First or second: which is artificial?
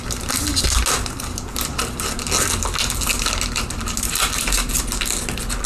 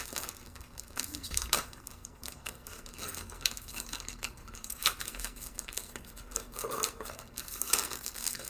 second